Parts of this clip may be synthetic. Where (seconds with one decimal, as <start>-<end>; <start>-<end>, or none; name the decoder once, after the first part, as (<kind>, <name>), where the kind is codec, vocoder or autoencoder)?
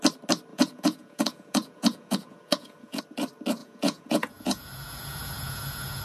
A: 0.5-3.0 (vocoder, Vocos); 3.6-6.0